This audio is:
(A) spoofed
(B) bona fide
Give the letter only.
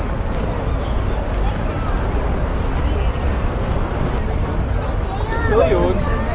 B